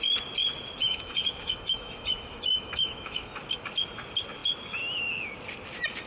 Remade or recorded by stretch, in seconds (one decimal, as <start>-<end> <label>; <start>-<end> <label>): 0.0-0.8 recorded; 0.8-3.4 remade; 3.4-6.1 recorded